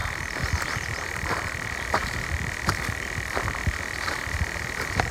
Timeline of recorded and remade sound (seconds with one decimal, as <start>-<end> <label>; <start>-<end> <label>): 0.0-0.5 recorded; 0.5-2.0 remade; 2.0-3.8 recorded; 3.8-5.1 remade